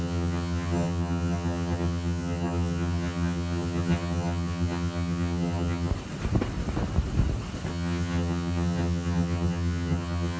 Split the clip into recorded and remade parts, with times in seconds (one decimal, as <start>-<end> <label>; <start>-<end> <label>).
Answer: 0.0-5.9 remade; 5.9-7.7 recorded; 7.7-10.4 remade